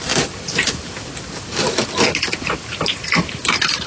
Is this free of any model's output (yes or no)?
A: yes